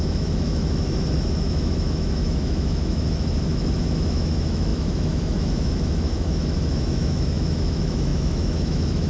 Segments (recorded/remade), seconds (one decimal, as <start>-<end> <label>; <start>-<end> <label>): 0.0-9.1 remade